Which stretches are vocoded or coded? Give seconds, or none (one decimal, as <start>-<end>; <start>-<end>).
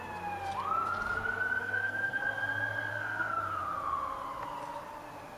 1.6-2.2; 2.9-3.4